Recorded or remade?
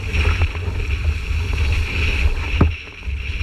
recorded